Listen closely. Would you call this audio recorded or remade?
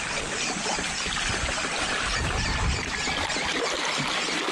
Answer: recorded